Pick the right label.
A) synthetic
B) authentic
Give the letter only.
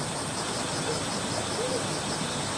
B